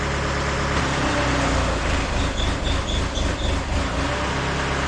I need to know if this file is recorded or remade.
recorded